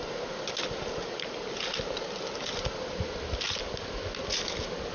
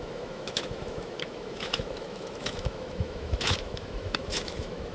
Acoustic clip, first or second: first